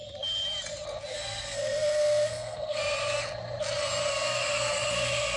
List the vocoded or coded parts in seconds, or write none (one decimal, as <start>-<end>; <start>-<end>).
1.1-2.8; 4.1-5.4